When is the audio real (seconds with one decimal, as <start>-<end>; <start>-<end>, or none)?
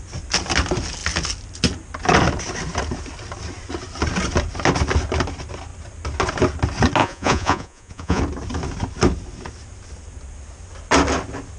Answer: 0.0-7.0; 8.2-11.6